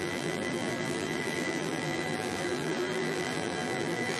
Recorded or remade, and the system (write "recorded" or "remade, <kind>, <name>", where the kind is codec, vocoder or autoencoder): remade, vocoder, BigVGAN v2